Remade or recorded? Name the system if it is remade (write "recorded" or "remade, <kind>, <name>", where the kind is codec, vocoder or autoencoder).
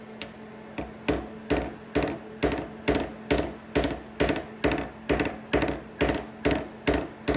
recorded